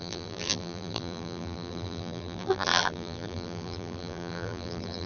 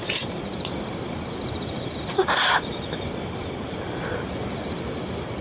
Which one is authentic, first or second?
second